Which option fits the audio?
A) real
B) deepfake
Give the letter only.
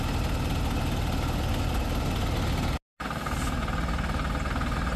A